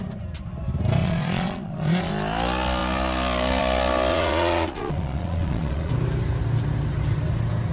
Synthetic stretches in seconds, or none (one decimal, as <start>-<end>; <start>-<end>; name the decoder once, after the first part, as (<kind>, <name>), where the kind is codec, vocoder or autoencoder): 1.0-2.1 (vocoder, Vocos); 4.1-5.9